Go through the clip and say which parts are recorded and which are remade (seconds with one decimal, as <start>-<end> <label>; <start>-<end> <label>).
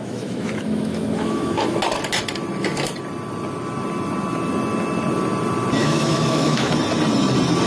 0.0-1.8 remade; 1.8-5.8 recorded; 5.8-6.7 remade; 6.7-7.7 recorded